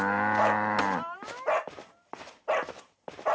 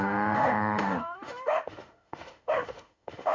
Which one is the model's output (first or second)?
second